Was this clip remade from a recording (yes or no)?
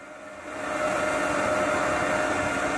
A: no